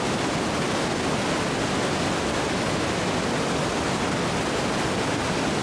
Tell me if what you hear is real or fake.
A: real